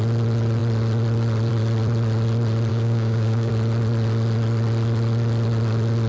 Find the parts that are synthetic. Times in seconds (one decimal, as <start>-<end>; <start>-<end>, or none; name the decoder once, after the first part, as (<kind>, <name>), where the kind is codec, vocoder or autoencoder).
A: 2.7-3.5 (codec, DAC)